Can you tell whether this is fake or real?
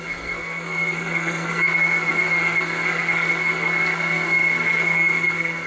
fake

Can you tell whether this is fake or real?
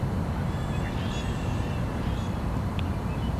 real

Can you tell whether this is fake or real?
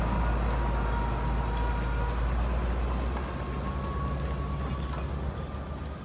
real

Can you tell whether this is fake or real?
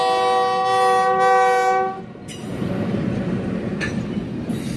real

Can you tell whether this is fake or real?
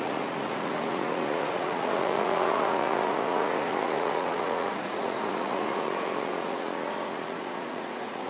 fake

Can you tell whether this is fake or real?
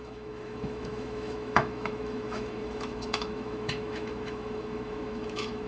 fake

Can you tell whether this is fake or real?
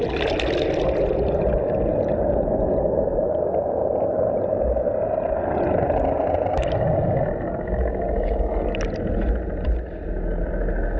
real